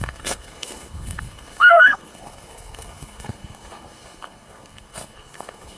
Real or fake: fake